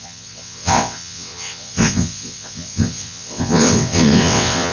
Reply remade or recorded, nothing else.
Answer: remade